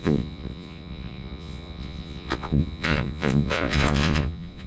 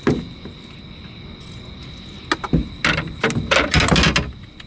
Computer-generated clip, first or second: first